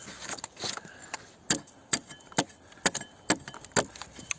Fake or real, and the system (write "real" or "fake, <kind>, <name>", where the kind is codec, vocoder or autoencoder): real